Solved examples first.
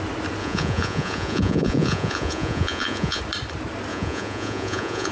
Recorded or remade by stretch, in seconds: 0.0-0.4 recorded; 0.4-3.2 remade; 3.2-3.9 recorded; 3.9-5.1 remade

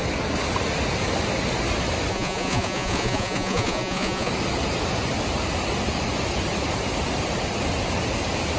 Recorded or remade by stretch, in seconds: 0.0-2.1 recorded; 2.1-4.3 remade; 4.3-8.6 recorded

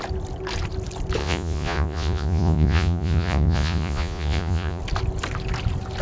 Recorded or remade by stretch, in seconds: 0.0-1.2 recorded; 1.2-4.8 remade; 4.8-6.0 recorded